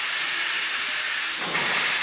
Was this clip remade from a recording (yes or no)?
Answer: no